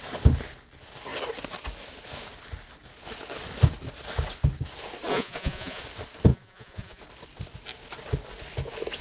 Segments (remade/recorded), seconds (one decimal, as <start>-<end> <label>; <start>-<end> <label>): 0.0-5.1 recorded; 5.1-5.8 remade; 5.8-6.3 recorded; 6.3-7.0 remade; 7.0-9.0 recorded